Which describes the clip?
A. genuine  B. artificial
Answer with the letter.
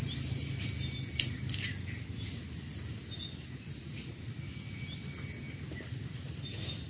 A